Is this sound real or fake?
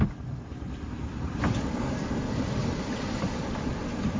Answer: real